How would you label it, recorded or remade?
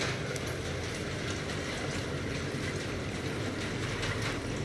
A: recorded